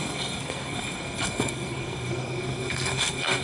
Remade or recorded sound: remade